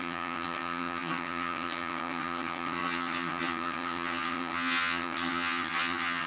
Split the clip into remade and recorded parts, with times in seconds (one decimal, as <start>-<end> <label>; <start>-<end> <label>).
0.0-6.3 remade